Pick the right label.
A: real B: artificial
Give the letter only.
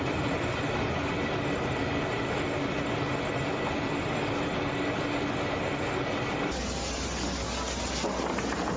A